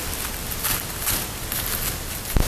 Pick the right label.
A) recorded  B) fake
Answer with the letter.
A